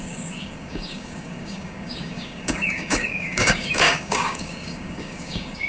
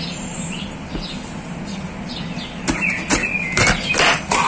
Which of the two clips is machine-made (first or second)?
first